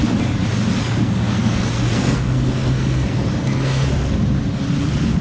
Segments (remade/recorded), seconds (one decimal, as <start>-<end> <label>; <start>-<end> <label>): 0.0-0.8 recorded; 0.8-3.9 remade; 3.9-5.2 recorded